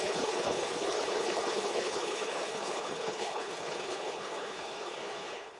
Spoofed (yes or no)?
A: yes